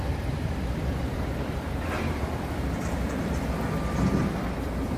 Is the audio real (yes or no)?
no